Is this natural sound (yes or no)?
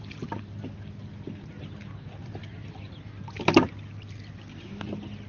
yes